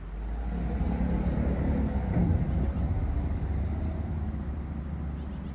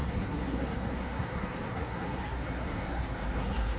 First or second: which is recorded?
first